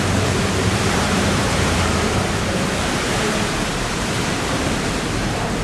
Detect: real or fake fake